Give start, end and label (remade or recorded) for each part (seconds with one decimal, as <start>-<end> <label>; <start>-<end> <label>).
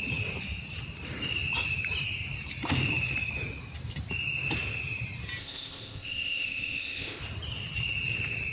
0.0-5.4 recorded; 5.4-7.2 remade; 7.2-8.5 recorded